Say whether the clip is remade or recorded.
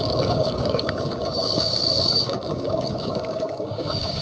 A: remade